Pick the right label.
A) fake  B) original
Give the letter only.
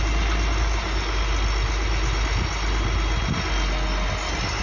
B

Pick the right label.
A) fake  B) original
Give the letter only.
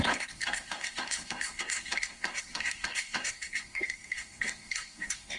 A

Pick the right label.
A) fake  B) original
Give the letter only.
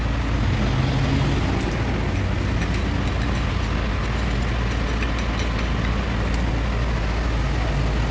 B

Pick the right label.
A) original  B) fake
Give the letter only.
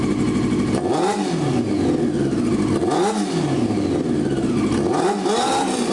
A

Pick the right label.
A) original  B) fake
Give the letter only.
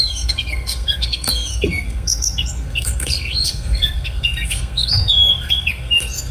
B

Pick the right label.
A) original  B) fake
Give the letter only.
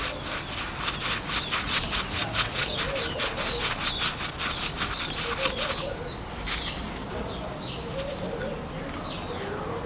A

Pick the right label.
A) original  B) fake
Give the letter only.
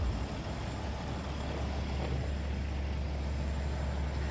A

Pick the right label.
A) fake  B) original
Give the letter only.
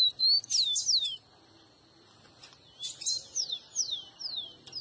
B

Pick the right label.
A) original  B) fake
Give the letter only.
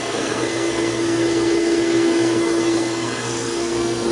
B